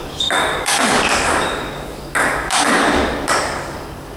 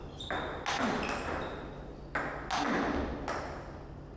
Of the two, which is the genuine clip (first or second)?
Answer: second